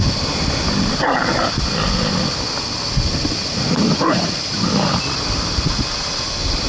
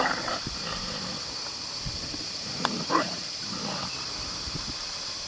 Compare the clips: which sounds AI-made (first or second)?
second